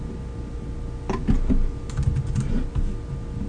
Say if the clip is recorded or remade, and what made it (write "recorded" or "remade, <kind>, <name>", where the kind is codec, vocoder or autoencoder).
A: recorded